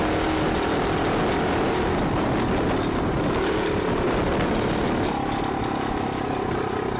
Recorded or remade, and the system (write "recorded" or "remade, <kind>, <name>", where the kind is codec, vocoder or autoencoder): recorded